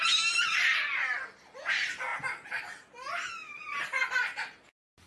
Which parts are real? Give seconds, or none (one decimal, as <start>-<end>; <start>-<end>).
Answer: 0.0-5.1